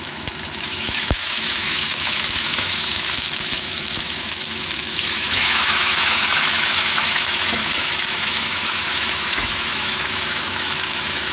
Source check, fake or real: fake